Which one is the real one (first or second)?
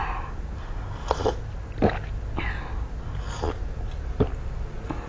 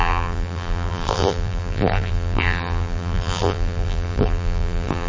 first